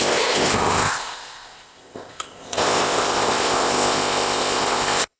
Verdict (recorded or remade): remade